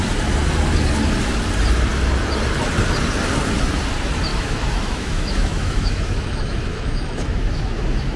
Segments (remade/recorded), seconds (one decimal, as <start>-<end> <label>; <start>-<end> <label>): 0.0-4.3 recorded; 4.3-8.2 remade